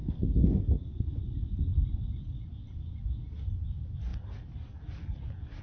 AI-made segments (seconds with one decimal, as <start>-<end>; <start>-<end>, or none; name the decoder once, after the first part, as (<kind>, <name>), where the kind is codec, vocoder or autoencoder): 0.0-0.9 (codec, SNAC)

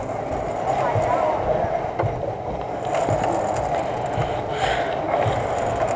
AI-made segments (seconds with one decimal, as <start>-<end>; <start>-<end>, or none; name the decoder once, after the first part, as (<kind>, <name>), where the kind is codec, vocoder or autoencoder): none

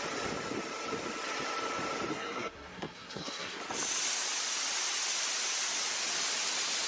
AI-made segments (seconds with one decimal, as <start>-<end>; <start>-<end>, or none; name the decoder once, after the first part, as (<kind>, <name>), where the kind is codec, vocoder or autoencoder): 2.1-3.6 (codec, SNAC)

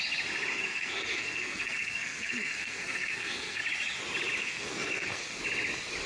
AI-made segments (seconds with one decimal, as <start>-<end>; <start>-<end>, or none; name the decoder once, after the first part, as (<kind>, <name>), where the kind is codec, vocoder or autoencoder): 0.7-3.6 (codec, SNAC); 4.4-5.4

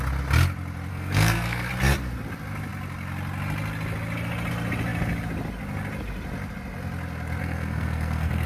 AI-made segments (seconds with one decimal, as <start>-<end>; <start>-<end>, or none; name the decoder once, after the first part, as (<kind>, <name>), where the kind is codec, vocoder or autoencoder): 0.9-1.7 (codec, SNAC); 7.4-8.5

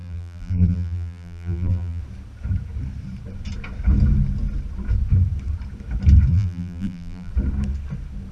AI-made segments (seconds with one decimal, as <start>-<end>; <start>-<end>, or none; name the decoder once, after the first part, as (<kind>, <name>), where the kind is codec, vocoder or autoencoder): 0.0-2.0 (vocoder, BigVGAN v2); 6.3-7.3

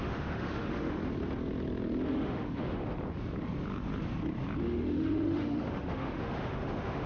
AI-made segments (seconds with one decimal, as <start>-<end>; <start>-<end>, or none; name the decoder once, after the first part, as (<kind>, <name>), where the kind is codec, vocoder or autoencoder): 0.0-1.0 (autoencoder, DAC-VAE); 2.1-2.8; 4.6-7.1